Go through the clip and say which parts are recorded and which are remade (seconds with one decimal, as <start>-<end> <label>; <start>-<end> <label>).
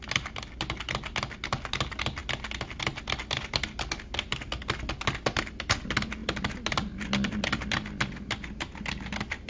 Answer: 0.0-9.5 recorded